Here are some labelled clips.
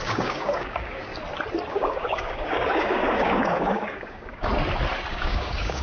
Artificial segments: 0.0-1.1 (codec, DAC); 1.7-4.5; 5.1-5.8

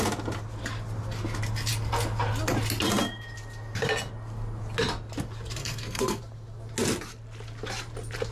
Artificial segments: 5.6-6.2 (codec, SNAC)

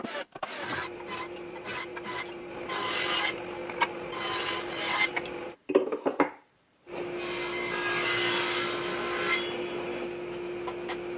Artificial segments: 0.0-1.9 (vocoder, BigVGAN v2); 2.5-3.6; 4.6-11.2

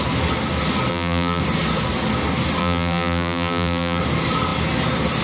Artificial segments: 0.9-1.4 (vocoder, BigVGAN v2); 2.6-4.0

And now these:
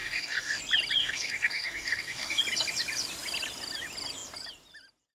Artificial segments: 0.0-0.6 (codec, DAC); 1.0-2.4

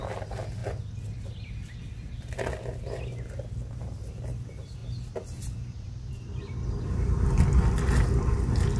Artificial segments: none

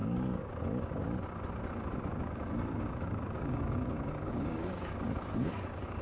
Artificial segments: 0.0-0.5 (codec, DAC); 2.1-6.0